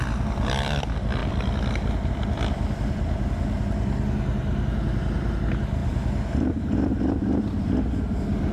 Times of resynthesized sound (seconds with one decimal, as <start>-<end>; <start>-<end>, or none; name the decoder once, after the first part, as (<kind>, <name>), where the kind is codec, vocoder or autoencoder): 1.2-2.1 (vocoder, BigVGAN v2); 5.8-6.6